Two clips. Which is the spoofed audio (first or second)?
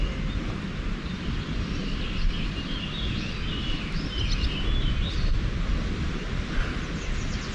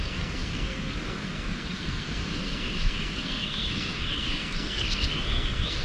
second